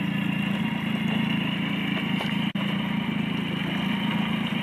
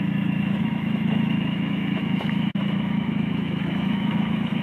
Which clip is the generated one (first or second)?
second